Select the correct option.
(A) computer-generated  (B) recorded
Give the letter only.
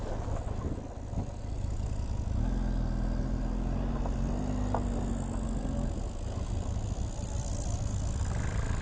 B